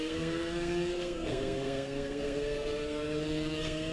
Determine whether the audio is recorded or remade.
remade